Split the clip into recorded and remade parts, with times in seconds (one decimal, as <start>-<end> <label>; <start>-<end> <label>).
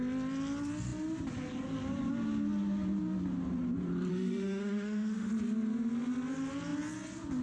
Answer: 0.0-4.1 recorded; 4.1-5.3 remade; 5.3-7.4 recorded